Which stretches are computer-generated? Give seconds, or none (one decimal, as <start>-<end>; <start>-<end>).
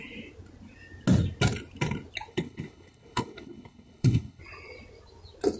2.3-4.4